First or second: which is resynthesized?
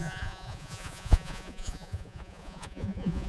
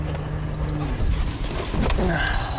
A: first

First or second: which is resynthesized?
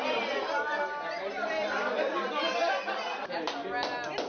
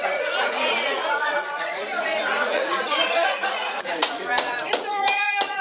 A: second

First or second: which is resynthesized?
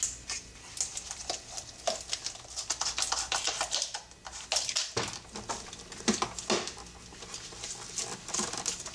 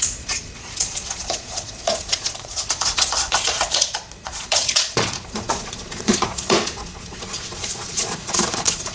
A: second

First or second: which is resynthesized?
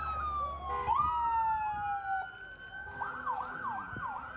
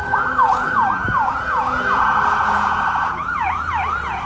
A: second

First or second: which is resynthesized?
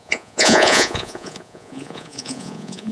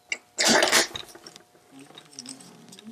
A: first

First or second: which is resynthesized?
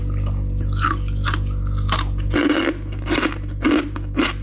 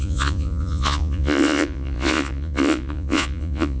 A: second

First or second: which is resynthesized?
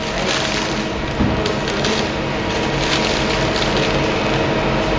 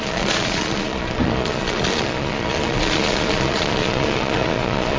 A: second